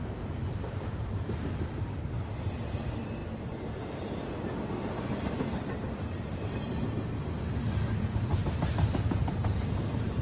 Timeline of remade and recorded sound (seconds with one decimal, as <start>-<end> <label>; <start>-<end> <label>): 0.0-3.2 remade; 3.2-8.0 recorded; 8.0-10.2 remade

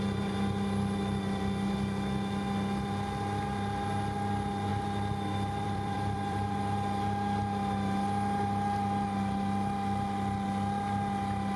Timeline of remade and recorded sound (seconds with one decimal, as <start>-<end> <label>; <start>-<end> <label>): 0.0-4.7 recorded; 4.7-6.5 remade; 6.5-11.6 recorded

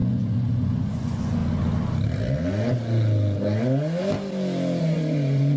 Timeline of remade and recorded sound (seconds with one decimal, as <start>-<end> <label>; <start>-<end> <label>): 0.0-1.4 remade; 1.4-4.8 recorded; 4.8-5.6 remade

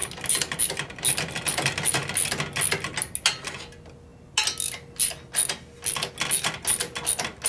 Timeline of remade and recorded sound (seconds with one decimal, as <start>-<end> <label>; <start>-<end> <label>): 0.0-7.5 recorded

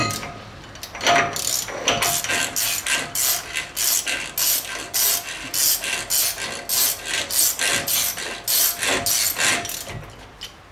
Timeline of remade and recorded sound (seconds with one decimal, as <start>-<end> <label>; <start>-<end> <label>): 0.0-10.7 recorded

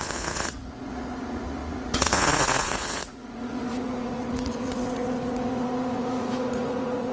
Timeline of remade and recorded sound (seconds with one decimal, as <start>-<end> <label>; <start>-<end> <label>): 0.0-7.1 remade

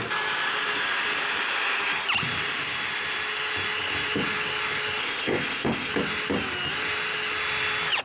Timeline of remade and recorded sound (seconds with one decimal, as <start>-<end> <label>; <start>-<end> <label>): 0.0-5.0 recorded; 5.0-5.9 remade; 5.9-8.0 recorded